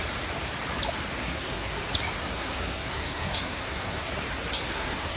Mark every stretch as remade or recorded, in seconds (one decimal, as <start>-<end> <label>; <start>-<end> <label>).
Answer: 0.0-1.2 recorded; 1.2-1.8 remade; 1.8-2.2 recorded; 2.2-4.1 remade; 4.1-4.5 recorded; 4.5-5.2 remade